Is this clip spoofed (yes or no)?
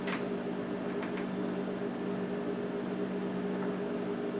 no